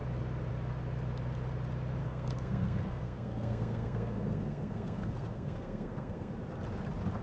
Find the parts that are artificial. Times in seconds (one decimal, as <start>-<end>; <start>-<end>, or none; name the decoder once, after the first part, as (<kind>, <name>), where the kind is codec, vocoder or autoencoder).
2.0-6.3 (codec, SNAC)